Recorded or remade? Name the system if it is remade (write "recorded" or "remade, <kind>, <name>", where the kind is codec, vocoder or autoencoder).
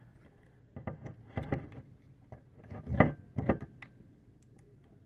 recorded